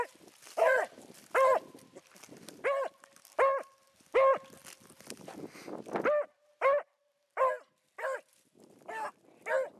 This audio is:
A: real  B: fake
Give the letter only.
A